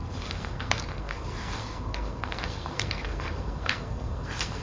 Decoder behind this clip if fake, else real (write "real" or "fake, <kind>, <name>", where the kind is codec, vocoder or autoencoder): fake, codec, SNAC